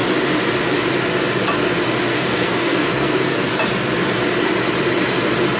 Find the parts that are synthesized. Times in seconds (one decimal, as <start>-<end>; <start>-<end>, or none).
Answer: 2.1-3.5